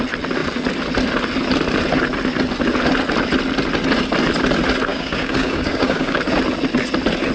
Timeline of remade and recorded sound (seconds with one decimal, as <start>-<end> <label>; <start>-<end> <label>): 0.0-4.9 recorded; 4.9-6.2 remade; 6.2-7.3 recorded